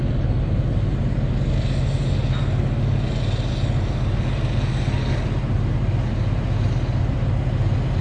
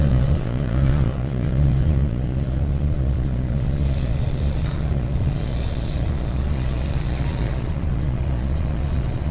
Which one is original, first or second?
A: first